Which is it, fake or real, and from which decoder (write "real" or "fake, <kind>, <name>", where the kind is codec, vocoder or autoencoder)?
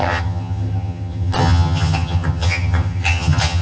fake, vocoder, HiFi-GAN